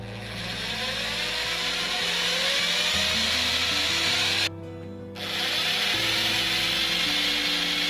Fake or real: real